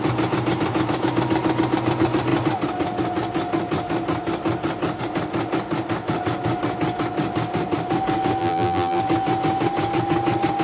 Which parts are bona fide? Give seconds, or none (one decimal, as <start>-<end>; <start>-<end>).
0.0-8.4; 9.0-10.6